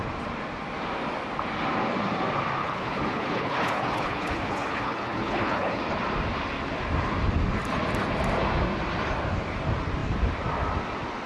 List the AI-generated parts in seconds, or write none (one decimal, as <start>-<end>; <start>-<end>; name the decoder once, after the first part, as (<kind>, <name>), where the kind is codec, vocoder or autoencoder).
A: 2.6-5.8 (codec, HILCodec)